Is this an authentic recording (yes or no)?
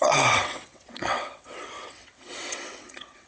no